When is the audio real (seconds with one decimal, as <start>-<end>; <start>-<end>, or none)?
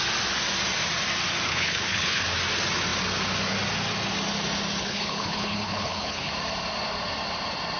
0.0-1.5; 2.2-4.8; 6.3-7.8